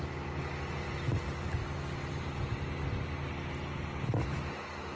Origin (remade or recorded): recorded